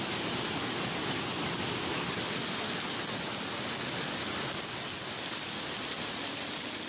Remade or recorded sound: recorded